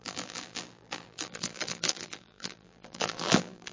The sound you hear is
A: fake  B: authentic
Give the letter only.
A